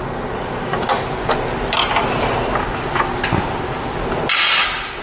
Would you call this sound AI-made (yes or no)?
no